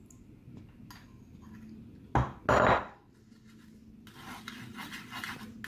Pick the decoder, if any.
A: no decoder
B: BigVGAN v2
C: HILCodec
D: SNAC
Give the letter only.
A